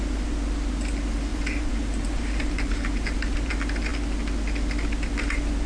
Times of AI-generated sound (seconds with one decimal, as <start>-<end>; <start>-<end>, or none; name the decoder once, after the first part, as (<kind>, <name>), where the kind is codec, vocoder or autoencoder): 1.3-3.5 (vocoder, BigVGAN v2)